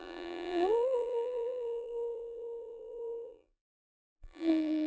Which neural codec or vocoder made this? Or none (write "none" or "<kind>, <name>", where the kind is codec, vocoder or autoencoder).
vocoder, BigVGAN v2